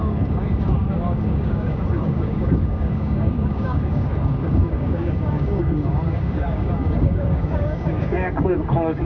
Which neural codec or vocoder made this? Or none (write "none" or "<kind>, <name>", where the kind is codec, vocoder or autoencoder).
codec, DAC